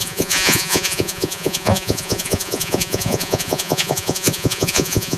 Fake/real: fake